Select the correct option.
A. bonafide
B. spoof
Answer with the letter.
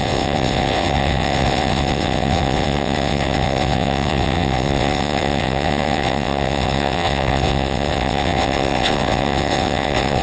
B